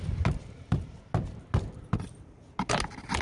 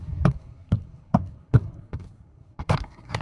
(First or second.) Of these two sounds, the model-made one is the second